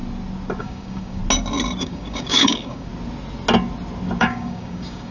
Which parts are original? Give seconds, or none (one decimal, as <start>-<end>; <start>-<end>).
0.0-0.6; 1.2-1.8; 2.9-4.2